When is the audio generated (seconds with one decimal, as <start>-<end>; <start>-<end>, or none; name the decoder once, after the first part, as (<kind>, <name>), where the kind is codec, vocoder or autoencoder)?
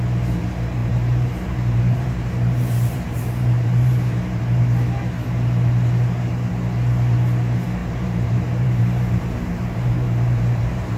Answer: 0.8-4.4 (vocoder, BigVGAN v2); 7.8-11.0